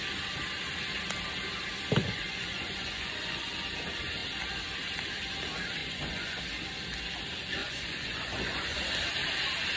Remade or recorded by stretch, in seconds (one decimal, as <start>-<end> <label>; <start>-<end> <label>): 0.0-2.0 recorded; 2.0-3.5 remade; 3.5-5.8 recorded; 5.8-6.4 remade; 6.4-7.6 recorded; 7.6-8.8 remade; 8.8-9.8 recorded

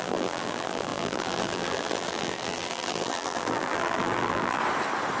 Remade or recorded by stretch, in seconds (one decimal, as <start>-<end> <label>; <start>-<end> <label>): 0.0-4.6 remade; 4.6-5.2 recorded